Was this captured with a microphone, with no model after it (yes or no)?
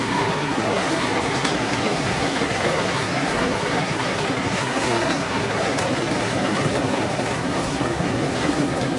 no